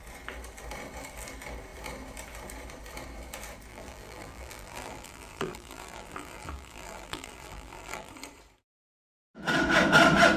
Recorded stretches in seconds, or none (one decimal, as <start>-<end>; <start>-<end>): 0.0-3.7; 8.1-10.4